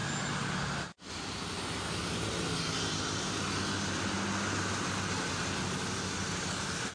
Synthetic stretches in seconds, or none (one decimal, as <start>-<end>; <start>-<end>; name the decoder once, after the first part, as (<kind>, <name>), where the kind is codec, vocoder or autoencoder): none